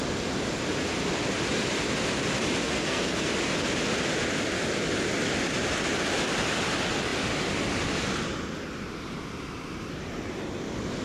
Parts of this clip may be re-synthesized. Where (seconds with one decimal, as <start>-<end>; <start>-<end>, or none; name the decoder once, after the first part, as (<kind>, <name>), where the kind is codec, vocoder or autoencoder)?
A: 2.6-3.3 (codec, SNAC)

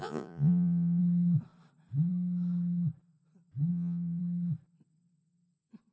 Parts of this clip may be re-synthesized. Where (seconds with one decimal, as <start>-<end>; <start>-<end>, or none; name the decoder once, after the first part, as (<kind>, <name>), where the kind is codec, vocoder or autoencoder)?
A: 0.0-1.0 (vocoder, Vocos); 3.7-4.2

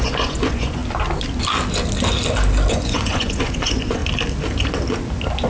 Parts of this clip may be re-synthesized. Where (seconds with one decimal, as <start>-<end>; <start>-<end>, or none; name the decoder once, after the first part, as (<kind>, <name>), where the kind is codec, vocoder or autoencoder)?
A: 0.0-0.8 (vocoder, Vocos); 2.7-4.0

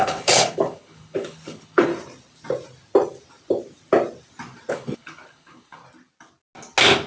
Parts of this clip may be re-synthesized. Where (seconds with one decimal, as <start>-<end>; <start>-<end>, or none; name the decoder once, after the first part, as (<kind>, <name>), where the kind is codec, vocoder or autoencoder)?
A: 0.0-1.9 (codec, HILCodec); 4.7-5.8

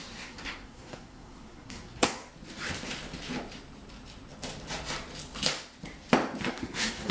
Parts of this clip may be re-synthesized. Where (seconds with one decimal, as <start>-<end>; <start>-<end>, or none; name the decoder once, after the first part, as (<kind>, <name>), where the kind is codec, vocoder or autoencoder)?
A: 0.0-2.2 (codec, SNAC); 6.5-7.1

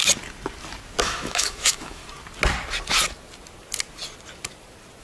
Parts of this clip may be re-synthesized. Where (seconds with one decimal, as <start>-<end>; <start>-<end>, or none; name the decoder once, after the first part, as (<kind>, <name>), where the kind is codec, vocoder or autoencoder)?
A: 1.0-2.0 (autoencoder, DAC-VAE)